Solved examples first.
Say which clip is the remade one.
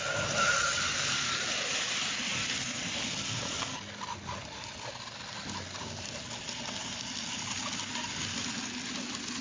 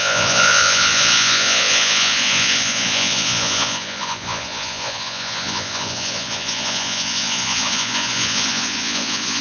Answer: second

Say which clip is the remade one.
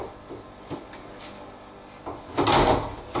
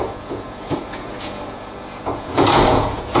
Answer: second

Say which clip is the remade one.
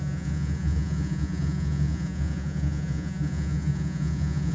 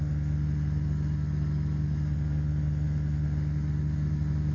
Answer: first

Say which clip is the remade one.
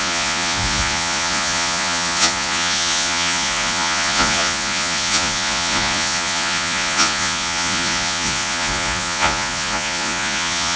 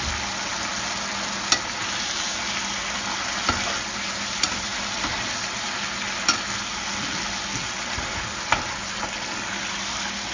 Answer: first